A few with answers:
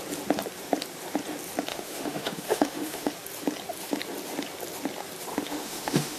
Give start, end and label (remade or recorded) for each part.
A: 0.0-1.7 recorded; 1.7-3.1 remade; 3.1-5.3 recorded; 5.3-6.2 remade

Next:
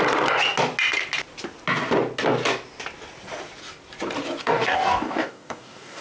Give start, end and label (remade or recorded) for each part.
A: 0.0-4.4 recorded; 4.4-6.0 remade

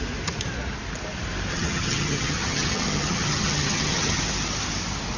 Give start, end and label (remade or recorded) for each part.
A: 0.0-1.5 recorded; 1.5-4.2 remade; 4.2-5.2 recorded

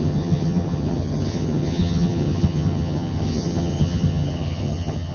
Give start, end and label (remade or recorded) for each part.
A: 0.0-5.1 remade

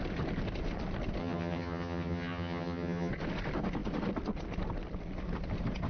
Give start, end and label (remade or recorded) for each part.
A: 0.0-1.2 recorded; 1.2-3.1 remade; 3.1-5.9 recorded

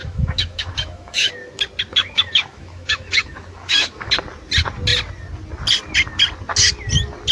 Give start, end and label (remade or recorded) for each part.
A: 0.0-1.3 remade; 1.3-2.0 recorded; 2.0-4.1 remade; 4.1-7.3 recorded